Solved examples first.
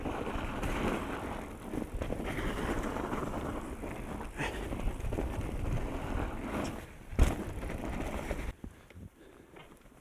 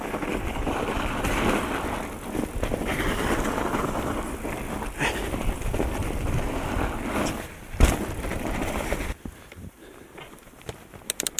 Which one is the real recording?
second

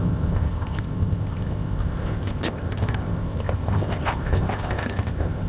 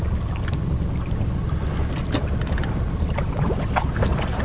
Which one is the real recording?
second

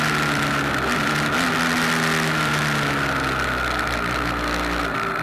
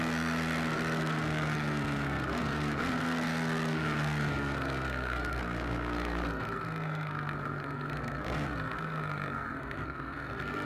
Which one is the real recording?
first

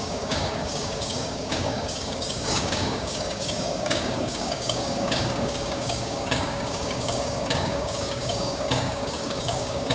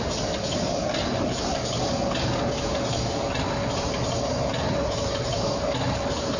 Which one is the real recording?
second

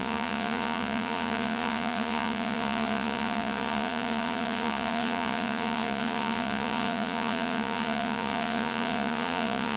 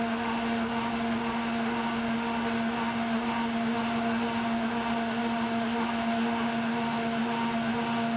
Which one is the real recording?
second